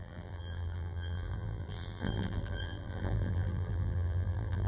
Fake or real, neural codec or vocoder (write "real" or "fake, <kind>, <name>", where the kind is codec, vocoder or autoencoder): fake, vocoder, BigVGAN v2